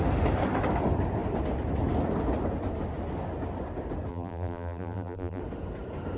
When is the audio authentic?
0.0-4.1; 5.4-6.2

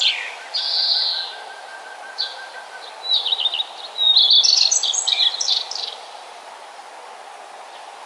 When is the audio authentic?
0.0-8.1

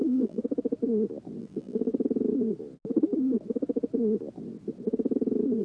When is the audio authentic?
0.4-1.4; 1.9-5.6

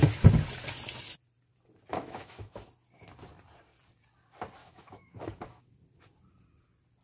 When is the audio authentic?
0.0-1.9; 2.7-4.6; 5.6-7.0